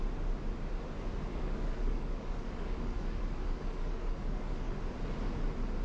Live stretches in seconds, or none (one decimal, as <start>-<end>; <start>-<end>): 0.0-1.3; 4.8-5.8